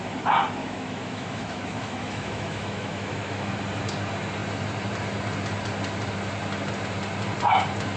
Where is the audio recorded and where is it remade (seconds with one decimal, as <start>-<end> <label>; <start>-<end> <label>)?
0.0-0.6 recorded; 0.6-3.5 remade; 3.5-8.0 recorded